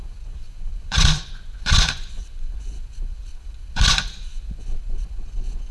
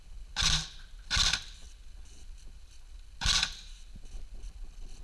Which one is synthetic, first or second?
first